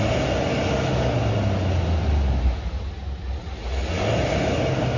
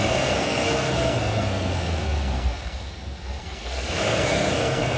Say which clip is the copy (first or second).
second